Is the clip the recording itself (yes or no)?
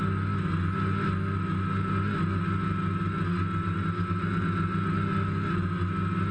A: yes